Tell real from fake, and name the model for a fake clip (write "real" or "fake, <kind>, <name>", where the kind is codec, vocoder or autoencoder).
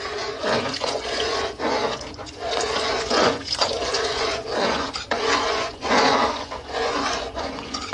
fake, vocoder, Vocos